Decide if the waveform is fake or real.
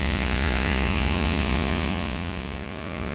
fake